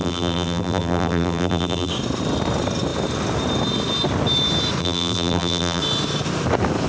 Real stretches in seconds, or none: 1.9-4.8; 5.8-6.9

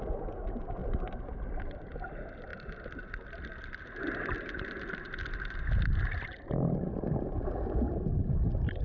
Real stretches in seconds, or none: 0.0-0.8; 2.1-2.5; 4.9-8.8

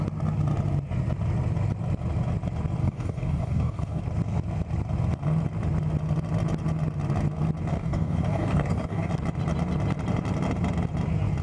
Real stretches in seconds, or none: 0.0-2.8; 4.0-7.7; 9.1-11.4